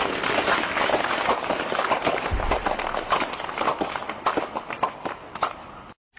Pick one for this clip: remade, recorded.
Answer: recorded